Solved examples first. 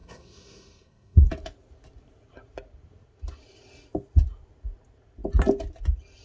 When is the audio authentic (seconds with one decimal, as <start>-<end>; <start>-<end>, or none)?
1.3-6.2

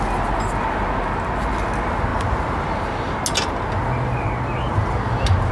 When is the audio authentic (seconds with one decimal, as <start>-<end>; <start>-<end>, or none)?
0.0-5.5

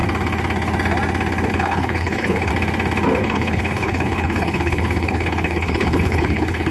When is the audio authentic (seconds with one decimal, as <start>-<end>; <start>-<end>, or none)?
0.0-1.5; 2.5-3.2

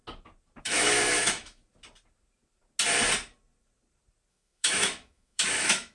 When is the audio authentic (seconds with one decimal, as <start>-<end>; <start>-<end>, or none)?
0.0-0.6; 1.6-4.3

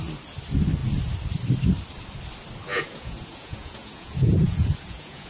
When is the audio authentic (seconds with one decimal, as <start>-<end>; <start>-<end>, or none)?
0.0-2.7

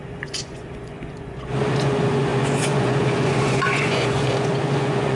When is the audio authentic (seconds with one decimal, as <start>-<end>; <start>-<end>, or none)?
none

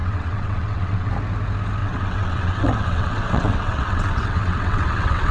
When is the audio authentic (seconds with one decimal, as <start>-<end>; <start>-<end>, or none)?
1.1-1.8